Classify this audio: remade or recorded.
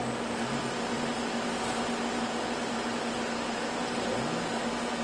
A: recorded